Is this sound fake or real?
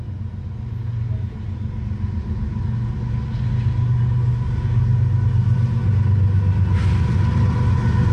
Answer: real